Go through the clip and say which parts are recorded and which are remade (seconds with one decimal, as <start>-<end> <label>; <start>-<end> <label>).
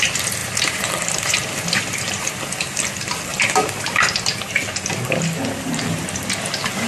0.0-0.4 recorded; 0.4-2.3 remade; 2.3-3.3 recorded; 3.3-4.0 remade; 4.0-6.9 recorded